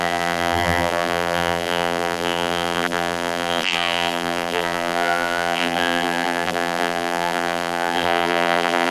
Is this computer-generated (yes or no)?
yes